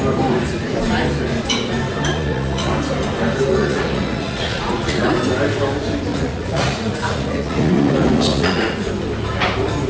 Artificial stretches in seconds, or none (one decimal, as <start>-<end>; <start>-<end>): 2.1-2.7; 3.5-5.1; 6.1-8.9